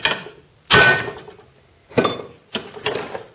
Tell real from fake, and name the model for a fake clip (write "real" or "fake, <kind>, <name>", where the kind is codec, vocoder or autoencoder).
real